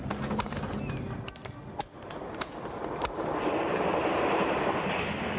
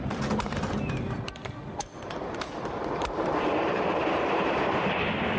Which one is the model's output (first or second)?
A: second